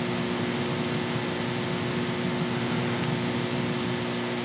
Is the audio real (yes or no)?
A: yes